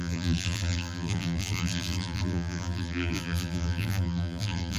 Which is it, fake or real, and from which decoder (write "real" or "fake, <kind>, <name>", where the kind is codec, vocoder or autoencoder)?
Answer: fake, vocoder, BigVGAN v2